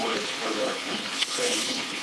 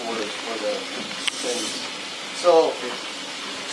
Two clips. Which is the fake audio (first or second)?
first